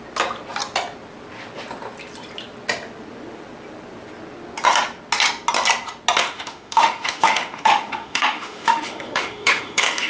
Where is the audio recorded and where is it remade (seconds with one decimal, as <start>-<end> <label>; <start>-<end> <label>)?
0.0-6.2 recorded; 6.2-10.1 remade